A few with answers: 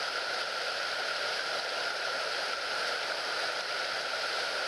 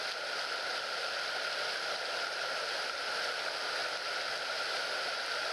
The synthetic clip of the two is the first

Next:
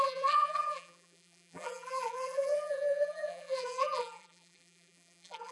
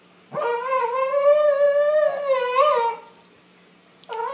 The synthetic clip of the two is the first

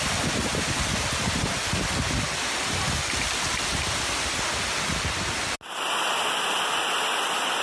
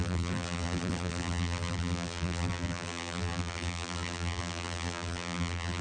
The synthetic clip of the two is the second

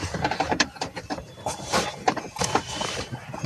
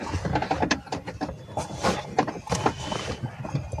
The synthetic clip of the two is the first